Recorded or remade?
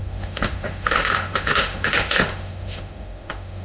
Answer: remade